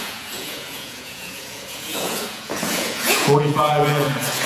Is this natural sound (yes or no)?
no